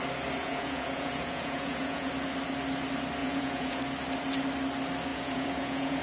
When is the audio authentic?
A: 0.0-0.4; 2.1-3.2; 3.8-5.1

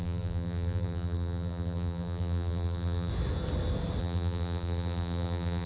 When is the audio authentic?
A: 3.1-4.0

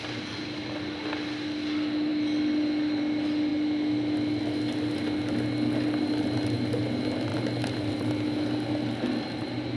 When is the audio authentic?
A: 0.0-9.8

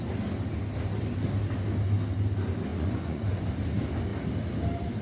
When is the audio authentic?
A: 0.0-2.7; 3.3-5.0

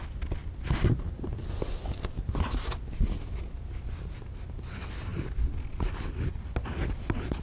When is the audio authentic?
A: 0.0-7.4

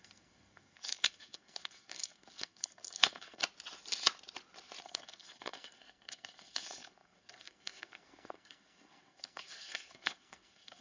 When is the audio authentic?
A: 3.4-4.8

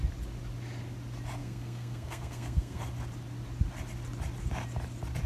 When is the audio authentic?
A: 0.0-1.4; 2.8-5.3

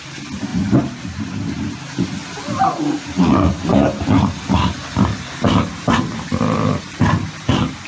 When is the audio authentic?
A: 0.0-7.9